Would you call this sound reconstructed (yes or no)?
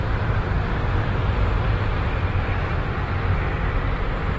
yes